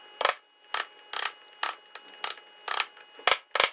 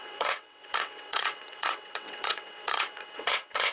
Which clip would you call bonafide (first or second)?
first